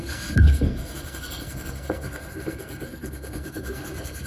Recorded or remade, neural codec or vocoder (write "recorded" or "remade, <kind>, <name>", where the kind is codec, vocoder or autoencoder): remade, codec, SNAC